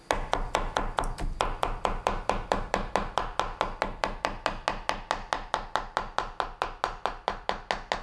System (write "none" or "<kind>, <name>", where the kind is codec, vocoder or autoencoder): none